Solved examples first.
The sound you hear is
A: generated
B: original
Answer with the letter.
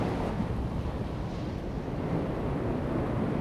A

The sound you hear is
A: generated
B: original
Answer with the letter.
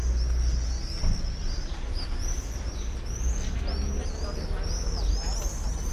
B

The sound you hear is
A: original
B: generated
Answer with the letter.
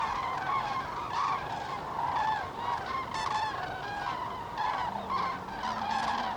B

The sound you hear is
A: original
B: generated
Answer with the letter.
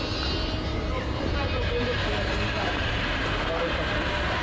B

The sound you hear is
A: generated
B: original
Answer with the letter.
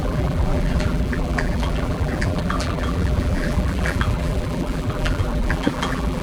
A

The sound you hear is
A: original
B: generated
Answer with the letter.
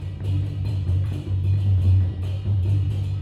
B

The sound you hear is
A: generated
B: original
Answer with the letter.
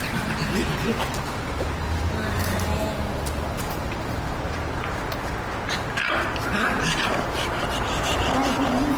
A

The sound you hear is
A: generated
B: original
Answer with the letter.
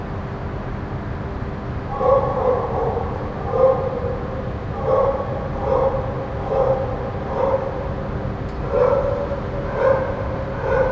B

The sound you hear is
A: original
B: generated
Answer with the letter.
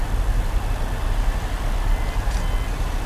A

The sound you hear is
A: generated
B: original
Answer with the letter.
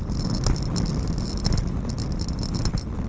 B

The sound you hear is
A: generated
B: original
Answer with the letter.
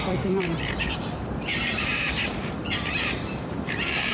A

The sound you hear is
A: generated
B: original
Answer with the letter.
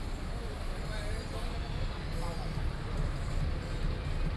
B